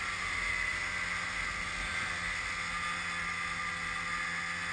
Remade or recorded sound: recorded